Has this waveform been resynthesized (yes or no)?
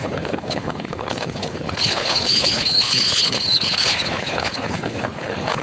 yes